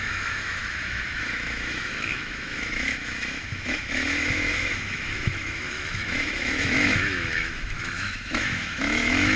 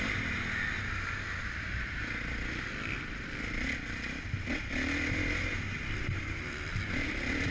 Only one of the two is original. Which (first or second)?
second